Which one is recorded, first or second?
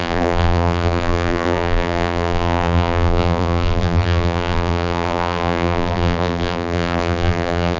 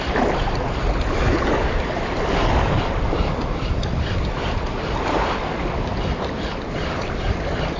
second